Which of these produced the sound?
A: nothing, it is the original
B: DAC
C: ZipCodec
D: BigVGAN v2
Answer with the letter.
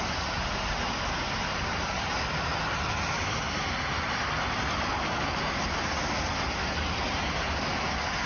A